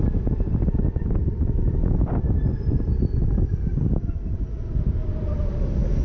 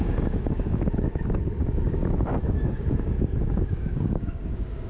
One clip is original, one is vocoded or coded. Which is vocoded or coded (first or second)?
second